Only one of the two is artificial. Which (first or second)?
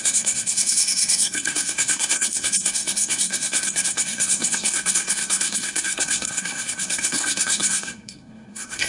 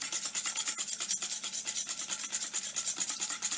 first